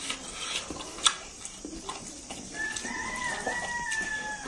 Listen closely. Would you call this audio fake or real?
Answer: real